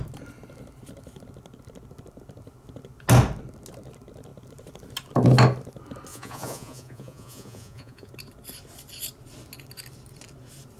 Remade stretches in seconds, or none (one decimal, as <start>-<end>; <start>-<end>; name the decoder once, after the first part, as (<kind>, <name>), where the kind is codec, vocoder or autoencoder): 6.1-8.1 (vocoder, Vocos)